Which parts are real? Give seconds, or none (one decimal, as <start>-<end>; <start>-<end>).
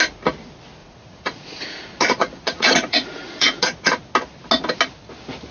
0.0-0.8; 4.0-5.5